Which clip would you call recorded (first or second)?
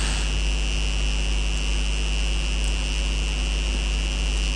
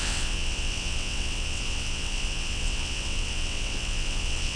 first